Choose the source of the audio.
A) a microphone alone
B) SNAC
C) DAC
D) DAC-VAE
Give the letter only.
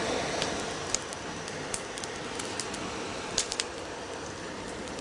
A